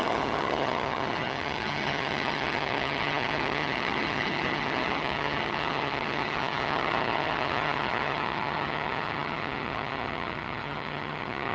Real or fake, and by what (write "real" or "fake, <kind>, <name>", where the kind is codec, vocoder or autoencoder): fake, vocoder, HiFi-GAN